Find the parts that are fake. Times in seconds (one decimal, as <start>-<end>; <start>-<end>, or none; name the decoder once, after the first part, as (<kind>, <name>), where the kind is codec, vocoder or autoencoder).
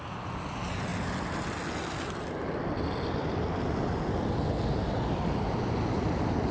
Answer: none